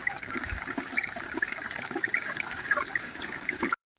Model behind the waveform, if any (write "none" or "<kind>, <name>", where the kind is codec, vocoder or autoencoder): codec, DAC